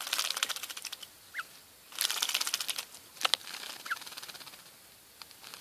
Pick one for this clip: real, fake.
real